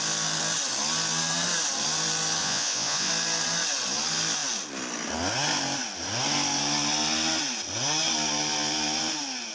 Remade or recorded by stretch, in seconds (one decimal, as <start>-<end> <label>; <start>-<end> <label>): 0.0-2.4 recorded; 2.4-3.1 remade; 3.1-9.5 recorded